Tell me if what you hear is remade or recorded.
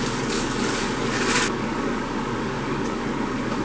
remade